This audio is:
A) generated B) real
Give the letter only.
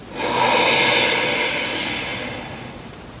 B